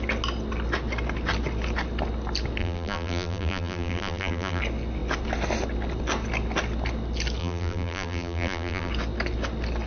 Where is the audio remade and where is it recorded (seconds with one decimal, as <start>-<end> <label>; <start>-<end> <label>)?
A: 0.0-2.6 recorded; 2.6-4.6 remade; 4.6-7.4 recorded; 7.4-8.9 remade; 8.9-9.9 recorded